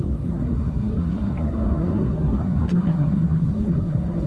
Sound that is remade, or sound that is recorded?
remade